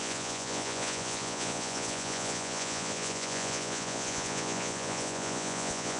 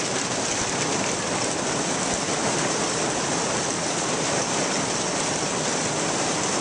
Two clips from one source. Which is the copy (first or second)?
first